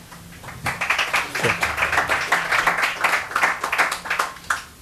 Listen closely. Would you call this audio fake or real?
real